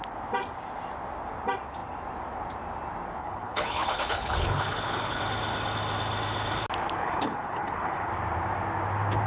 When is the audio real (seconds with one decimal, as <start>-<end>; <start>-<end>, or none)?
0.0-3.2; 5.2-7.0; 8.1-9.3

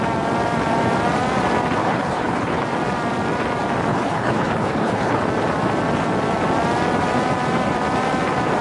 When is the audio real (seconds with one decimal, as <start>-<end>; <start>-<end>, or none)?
0.0-1.8; 2.6-3.9; 5.2-8.6

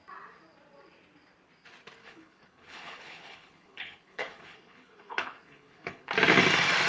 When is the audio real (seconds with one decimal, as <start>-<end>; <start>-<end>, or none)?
0.0-2.0; 6.1-6.9